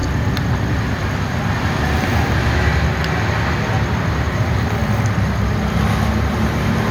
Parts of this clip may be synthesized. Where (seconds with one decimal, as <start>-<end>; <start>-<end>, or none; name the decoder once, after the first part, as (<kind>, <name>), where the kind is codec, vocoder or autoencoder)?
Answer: 4.1-4.8 (vocoder, BigVGAN v2); 6.3-6.9